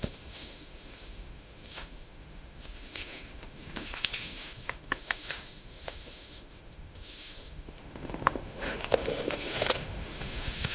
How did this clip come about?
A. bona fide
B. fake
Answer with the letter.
B